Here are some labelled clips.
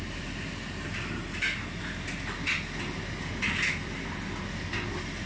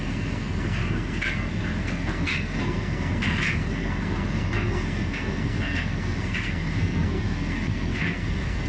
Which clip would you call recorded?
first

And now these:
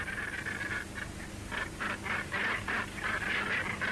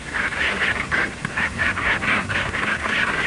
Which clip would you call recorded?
first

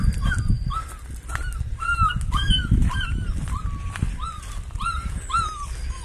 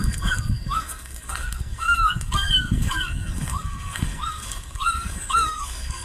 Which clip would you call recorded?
first